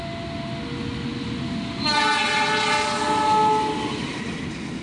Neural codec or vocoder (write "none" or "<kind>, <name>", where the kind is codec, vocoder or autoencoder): none